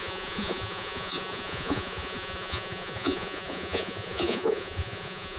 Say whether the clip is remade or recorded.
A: remade